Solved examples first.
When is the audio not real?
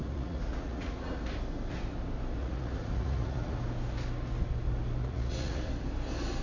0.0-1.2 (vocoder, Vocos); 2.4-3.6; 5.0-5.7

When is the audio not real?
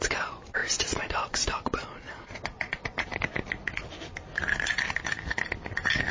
0.6-3.2 (vocoder, Vocos)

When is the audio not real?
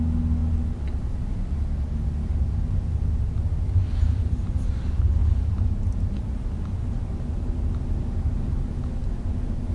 none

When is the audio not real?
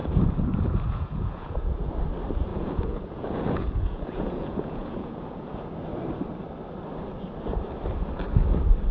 0.0-1.9 (vocoder, Vocos); 2.5-5.7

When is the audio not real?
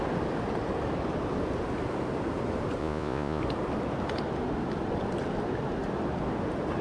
2.8-3.4 (vocoder, Vocos)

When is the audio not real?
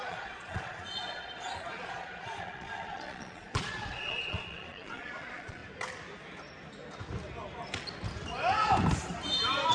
0.0-5.6 (vocoder, Vocos)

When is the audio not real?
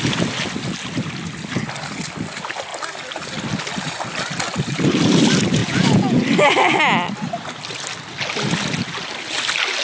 5.6-6.2 (vocoder, Vocos)